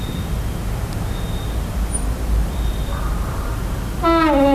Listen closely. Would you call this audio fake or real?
real